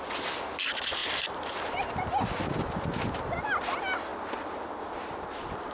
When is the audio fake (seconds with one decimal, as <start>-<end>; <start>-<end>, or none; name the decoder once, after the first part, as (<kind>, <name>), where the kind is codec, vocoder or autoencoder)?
none